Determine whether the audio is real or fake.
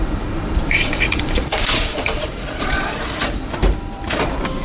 fake